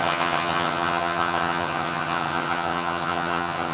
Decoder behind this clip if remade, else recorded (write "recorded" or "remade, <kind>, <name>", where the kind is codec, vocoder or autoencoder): remade, vocoder, HiFi-GAN